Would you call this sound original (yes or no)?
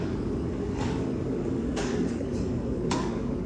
no